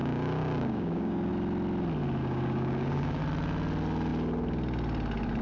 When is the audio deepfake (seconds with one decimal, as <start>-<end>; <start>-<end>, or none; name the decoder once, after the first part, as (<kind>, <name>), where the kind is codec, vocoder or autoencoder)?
0.0-1.3 (codec, DAC); 2.2-3.2